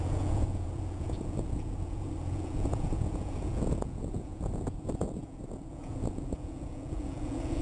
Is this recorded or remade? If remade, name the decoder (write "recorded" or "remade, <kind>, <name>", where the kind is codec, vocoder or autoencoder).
remade, vocoder, Vocos